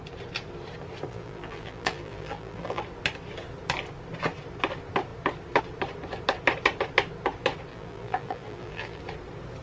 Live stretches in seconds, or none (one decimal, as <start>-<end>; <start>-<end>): 0.0-1.1; 2.8-7.7; 9.0-9.6